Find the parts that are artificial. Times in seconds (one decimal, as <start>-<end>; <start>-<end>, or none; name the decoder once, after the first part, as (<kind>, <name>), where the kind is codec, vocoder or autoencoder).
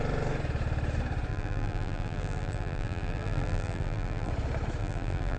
1.3-4.3 (vocoder, BigVGAN v2); 4.8-5.4